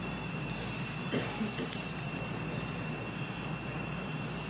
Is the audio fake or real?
real